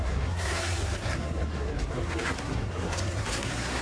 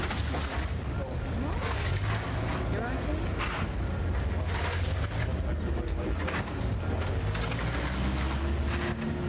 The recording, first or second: second